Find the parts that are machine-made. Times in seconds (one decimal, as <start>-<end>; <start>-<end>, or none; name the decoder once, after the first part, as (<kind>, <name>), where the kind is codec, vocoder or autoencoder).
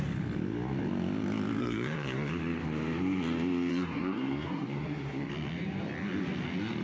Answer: 1.6-2.3 (codec, SNAC); 3.7-5.3